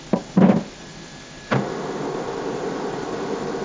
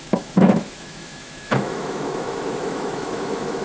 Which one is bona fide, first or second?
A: first